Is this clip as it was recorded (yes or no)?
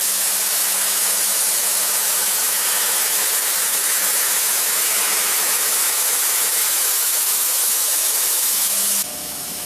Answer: no